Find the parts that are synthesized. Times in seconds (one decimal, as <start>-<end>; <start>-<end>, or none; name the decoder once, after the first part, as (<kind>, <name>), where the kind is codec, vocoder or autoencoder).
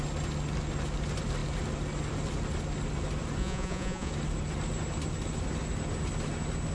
3.4-4.1 (vocoder, Vocos)